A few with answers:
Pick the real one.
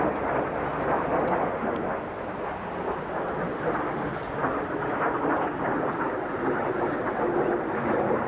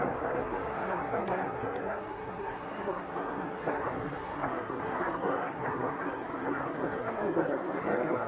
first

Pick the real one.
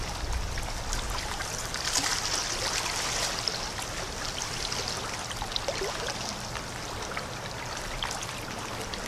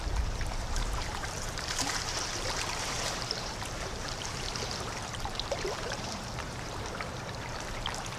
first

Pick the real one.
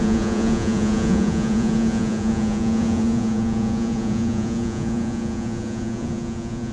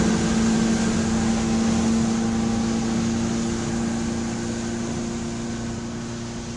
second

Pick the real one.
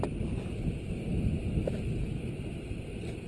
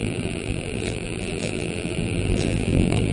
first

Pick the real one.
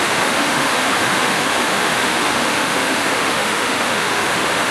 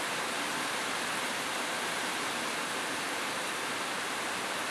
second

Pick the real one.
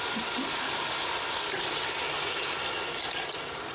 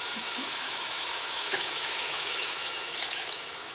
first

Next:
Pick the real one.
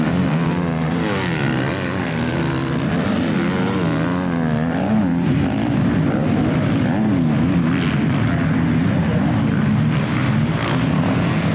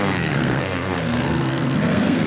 first